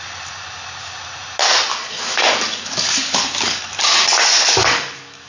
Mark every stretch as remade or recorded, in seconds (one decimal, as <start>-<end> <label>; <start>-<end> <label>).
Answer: 0.0-1.7 recorded; 1.7-3.8 remade; 3.8-4.6 recorded; 4.6-5.3 remade